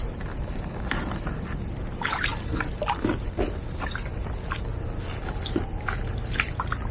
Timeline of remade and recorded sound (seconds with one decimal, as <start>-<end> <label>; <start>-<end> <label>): 0.0-6.9 recorded